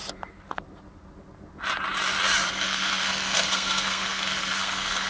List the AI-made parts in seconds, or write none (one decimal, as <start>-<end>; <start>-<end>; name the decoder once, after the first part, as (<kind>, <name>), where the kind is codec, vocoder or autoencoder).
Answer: 2.5-5.1 (codec, SNAC)